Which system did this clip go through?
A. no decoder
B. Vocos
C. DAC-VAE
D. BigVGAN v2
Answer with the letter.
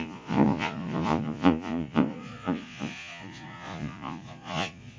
B